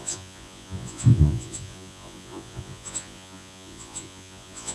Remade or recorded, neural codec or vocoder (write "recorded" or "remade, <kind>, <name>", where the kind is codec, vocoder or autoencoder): remade, vocoder, Vocos